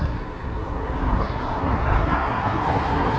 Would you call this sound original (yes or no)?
no